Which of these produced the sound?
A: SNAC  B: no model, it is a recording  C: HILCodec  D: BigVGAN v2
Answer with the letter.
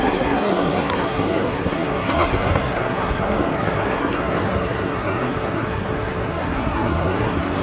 A